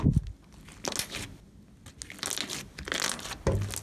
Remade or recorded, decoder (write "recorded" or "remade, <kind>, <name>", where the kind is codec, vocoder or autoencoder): recorded